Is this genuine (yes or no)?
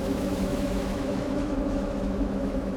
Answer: no